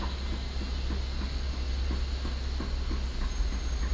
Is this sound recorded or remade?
recorded